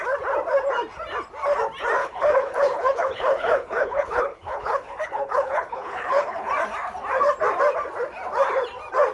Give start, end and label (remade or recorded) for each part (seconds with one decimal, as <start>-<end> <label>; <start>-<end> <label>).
0.0-2.0 recorded; 2.0-6.5 remade; 6.5-9.1 recorded